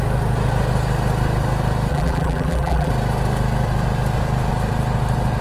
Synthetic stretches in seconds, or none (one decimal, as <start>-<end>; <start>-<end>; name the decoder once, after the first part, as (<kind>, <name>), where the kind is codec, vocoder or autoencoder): 1.9-2.9 (vocoder, BigVGAN v2)